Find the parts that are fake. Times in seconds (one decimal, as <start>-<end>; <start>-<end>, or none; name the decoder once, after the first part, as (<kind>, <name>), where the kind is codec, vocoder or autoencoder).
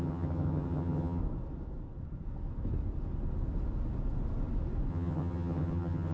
0.0-1.2 (vocoder, HiFi-GAN); 4.9-6.1